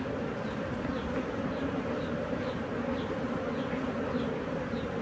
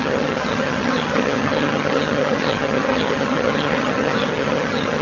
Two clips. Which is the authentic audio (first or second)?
first